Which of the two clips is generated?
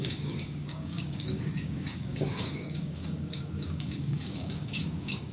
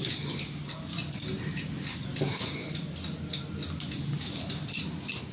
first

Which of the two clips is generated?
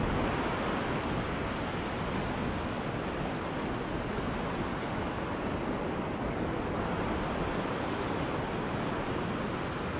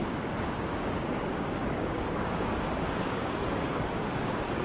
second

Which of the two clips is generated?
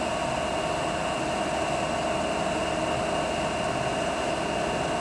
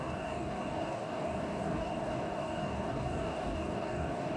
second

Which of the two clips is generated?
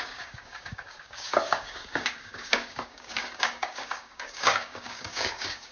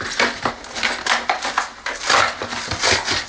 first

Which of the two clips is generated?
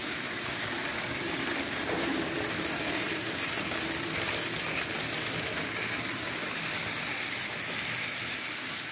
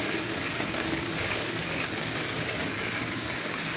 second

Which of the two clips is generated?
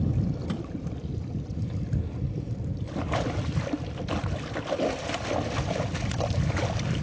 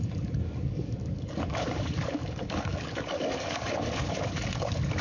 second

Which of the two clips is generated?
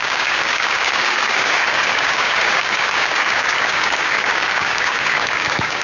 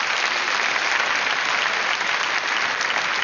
first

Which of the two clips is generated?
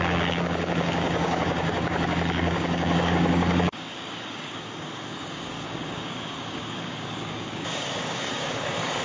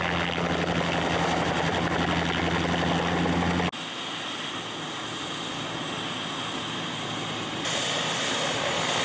first